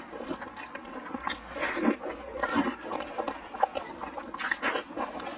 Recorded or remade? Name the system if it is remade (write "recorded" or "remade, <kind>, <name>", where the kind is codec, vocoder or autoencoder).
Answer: recorded